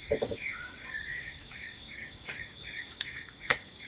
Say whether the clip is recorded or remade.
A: remade